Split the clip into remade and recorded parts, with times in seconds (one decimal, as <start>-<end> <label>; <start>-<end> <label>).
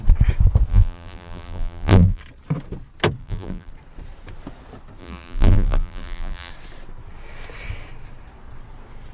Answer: 0.0-0.7 recorded; 0.7-2.2 remade; 2.2-3.2 recorded; 3.2-3.7 remade; 3.7-5.0 recorded; 5.0-6.5 remade; 6.5-9.1 recorded